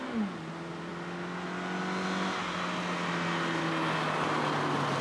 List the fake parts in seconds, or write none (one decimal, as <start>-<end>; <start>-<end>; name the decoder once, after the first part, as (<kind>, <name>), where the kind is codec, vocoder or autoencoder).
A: none